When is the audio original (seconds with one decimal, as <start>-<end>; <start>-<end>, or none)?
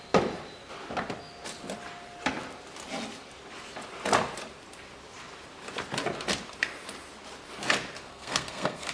0.0-8.1